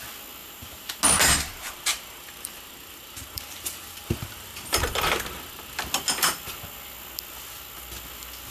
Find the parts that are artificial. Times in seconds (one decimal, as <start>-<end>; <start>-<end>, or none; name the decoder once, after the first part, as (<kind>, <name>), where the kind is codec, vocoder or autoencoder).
0.4-1.0 (vocoder, BigVGAN v2); 1.5-4.9